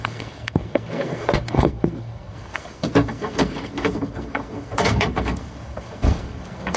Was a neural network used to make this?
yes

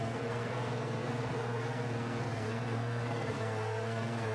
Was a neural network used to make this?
yes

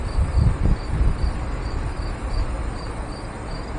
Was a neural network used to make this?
no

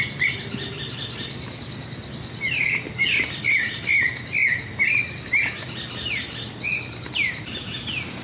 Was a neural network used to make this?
no